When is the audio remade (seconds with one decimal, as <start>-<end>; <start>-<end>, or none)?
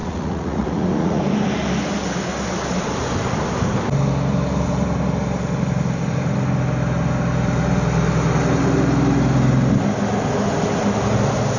0.0-1.2